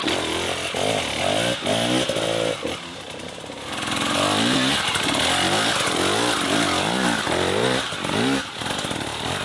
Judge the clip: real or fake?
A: real